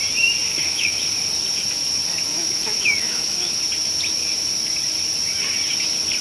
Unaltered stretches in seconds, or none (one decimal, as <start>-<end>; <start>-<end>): 0.0-0.5; 1.0-2.3; 3.6-6.2